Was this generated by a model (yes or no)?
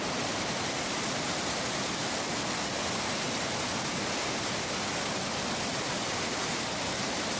no